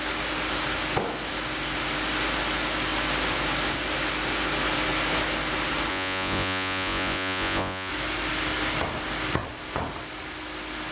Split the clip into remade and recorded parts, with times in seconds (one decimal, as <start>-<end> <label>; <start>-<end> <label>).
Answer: 0.0-5.9 recorded; 5.9-7.9 remade; 7.9-10.9 recorded